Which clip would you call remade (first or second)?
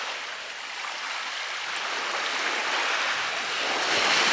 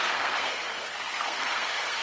second